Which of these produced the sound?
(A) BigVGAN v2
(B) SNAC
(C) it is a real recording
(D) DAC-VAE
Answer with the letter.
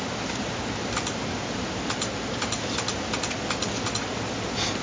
C